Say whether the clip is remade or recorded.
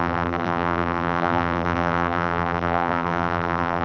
remade